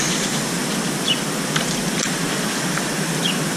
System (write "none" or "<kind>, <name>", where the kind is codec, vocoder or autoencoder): none